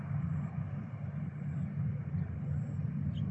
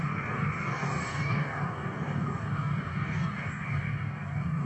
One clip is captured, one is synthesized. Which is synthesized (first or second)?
second